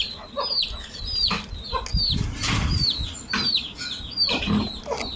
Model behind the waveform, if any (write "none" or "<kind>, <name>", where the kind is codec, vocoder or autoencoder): none